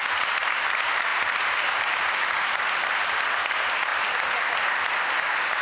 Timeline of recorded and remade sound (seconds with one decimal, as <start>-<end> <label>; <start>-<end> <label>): 0.0-5.6 recorded

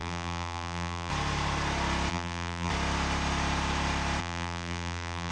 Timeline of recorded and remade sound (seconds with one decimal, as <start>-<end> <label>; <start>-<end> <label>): 0.0-1.1 remade; 1.1-2.1 recorded; 2.1-2.7 remade; 2.7-4.2 recorded; 4.2-5.3 remade

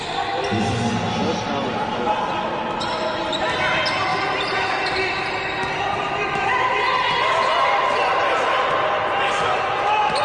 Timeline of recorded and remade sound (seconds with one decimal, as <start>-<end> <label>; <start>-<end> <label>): 0.0-10.2 recorded

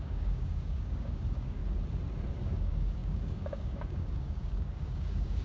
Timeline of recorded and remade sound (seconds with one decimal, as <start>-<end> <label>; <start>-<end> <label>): 0.0-1.6 remade; 1.6-2.3 recorded; 2.3-5.4 remade

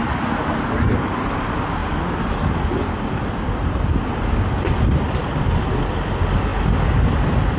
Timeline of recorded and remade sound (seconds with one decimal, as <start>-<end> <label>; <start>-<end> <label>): 0.0-7.6 recorded

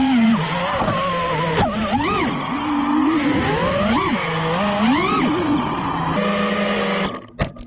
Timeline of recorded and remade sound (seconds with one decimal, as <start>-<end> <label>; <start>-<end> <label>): 0.0-7.7 recorded

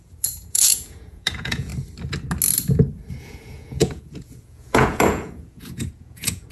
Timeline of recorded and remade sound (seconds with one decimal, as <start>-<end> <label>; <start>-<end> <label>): 0.0-1.7 remade; 1.7-3.2 recorded; 3.2-6.5 remade

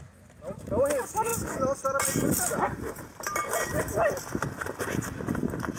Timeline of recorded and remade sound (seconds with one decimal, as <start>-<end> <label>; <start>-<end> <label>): 0.0-5.8 recorded